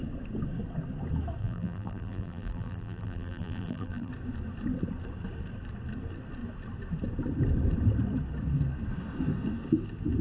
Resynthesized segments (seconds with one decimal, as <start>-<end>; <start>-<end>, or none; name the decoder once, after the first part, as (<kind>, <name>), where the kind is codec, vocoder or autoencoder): 1.4-4.1 (vocoder, BigVGAN v2)

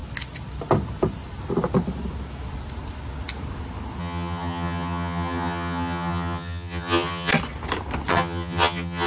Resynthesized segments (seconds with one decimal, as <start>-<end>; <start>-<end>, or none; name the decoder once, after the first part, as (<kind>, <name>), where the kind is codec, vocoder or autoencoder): 4.0-7.3 (vocoder, HiFi-GAN); 8.1-9.1